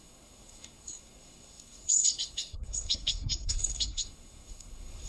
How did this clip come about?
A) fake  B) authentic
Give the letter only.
A